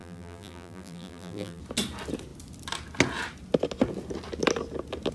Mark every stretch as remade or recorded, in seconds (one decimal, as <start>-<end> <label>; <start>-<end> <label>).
0.0-1.6 remade; 1.6-5.1 recorded